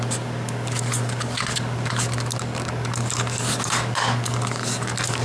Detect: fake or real fake